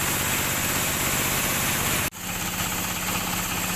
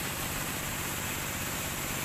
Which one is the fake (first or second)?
second